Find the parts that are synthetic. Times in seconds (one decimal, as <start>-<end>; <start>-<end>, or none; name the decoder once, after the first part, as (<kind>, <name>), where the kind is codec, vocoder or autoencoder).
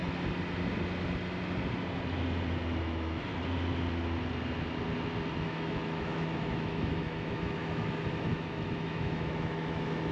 2.8-3.3 (autoencoder, DAC-VAE); 5.4-10.1